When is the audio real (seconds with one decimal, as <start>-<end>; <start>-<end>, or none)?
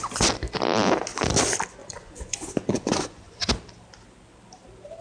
0.0-1.8; 3.5-5.0